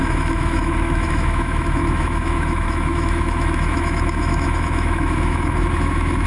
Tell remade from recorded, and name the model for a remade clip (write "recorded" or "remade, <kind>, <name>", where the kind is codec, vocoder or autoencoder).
remade, autoencoder, DAC-VAE